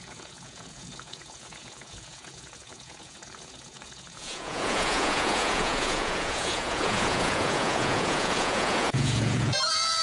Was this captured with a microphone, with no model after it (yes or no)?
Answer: no